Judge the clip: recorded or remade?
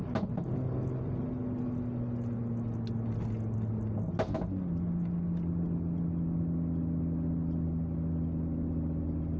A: recorded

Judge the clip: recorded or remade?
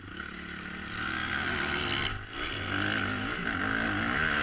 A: recorded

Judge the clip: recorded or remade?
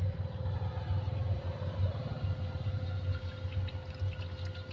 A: recorded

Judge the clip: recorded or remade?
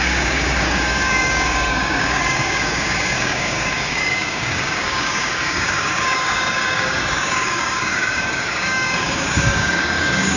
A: remade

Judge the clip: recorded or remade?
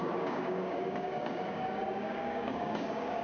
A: remade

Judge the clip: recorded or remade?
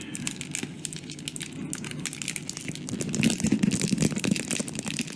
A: recorded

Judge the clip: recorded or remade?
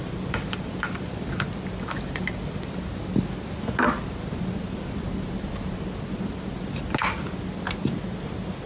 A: recorded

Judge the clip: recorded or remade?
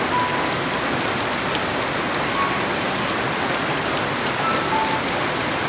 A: recorded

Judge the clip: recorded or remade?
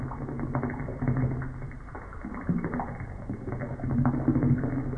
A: recorded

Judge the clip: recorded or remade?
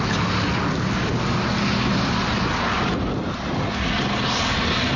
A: recorded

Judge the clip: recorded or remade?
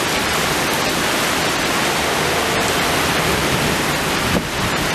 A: recorded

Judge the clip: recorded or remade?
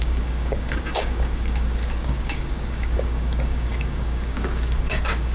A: remade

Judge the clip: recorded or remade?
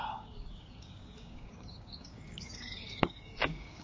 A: remade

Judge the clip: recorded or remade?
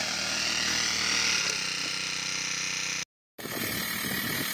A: recorded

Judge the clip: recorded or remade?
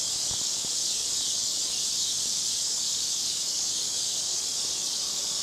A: remade